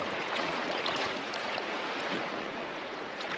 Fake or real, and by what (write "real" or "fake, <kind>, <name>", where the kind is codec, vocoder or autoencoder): fake, vocoder, Vocos